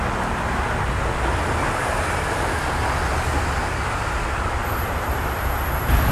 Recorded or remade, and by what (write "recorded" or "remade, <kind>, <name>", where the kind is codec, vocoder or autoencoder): recorded